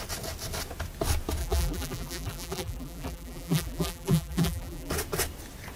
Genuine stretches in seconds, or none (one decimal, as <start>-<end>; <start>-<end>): 0.0-1.4; 4.9-5.8